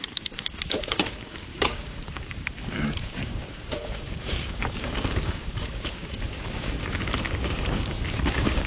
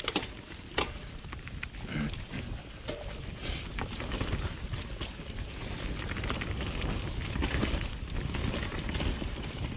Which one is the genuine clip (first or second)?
second